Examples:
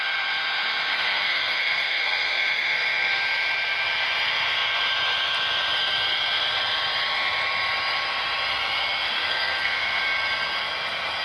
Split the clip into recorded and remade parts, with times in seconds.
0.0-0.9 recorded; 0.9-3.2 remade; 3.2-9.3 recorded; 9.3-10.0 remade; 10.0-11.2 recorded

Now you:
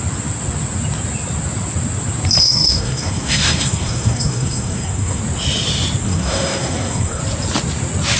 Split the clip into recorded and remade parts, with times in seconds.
0.0-2.4 recorded; 2.4-5.2 remade; 5.2-6.0 recorded; 6.0-7.2 remade; 7.2-8.2 recorded

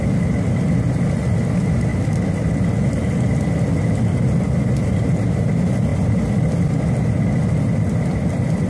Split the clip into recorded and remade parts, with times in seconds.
0.0-8.7 recorded